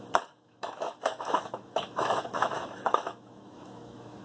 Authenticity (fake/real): fake